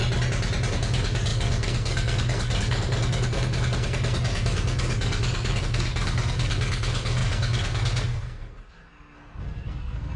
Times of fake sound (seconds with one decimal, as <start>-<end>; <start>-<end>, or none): 0.7-10.2